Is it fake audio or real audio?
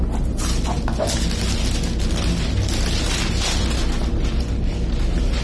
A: real